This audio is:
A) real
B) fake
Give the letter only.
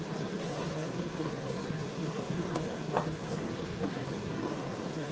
B